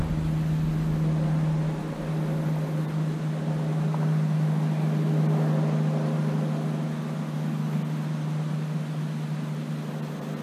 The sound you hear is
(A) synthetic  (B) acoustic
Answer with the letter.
B